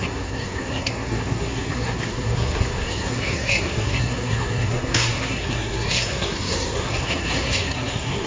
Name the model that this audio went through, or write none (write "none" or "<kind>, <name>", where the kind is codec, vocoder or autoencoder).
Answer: codec, SNAC